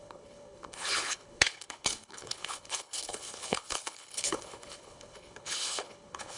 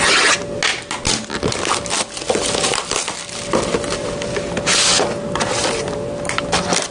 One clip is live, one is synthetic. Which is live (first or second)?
second